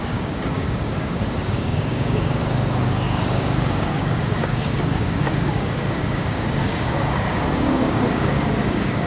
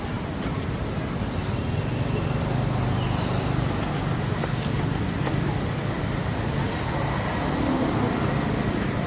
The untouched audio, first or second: second